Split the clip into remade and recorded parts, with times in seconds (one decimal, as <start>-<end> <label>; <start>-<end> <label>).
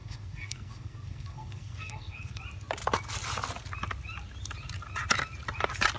0.0-2.4 remade; 2.4-6.0 recorded